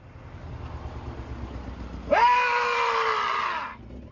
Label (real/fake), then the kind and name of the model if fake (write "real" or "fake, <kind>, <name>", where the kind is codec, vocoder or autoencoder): real